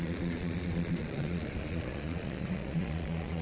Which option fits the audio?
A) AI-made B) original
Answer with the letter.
A